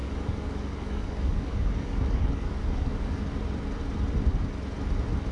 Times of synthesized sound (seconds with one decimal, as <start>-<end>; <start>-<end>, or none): 0.0-3.2